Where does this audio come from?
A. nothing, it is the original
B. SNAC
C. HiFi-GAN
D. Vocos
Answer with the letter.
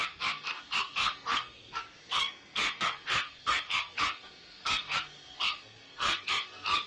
B